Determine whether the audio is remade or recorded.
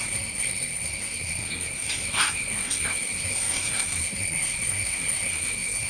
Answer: remade